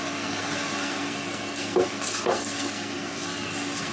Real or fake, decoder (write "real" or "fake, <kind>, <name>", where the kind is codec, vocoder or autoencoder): fake, codec, SNAC